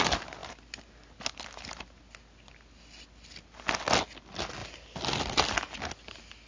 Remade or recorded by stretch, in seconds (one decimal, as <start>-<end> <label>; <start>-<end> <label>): 0.0-6.5 recorded